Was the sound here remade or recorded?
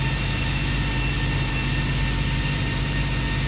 recorded